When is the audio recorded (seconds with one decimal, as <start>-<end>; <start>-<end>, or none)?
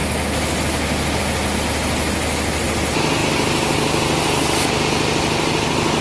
0.0-6.0